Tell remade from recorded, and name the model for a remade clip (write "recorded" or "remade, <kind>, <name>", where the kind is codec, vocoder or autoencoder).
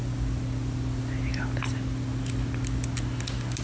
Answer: recorded